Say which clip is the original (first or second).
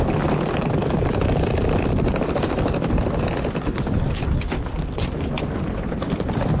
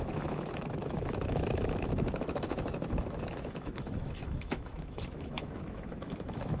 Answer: first